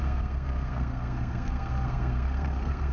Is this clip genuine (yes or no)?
no